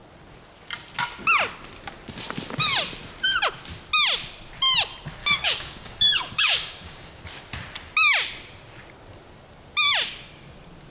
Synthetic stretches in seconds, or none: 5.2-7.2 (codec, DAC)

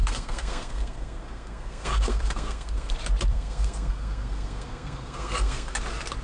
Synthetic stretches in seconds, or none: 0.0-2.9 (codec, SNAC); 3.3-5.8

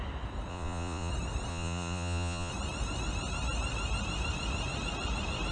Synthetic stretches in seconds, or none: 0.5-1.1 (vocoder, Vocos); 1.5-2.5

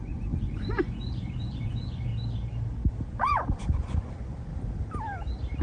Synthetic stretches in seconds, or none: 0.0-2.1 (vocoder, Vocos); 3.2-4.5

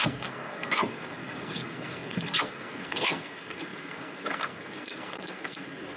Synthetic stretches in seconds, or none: 0.0-6.0 (codec, SNAC)

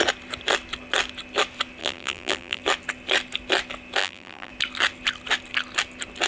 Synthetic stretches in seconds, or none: 1.8-2.6 (vocoder, BigVGAN v2); 4.0-4.5